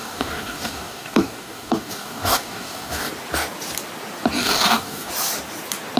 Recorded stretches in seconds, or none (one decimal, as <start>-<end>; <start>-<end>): 3.1-4.4; 5.1-6.0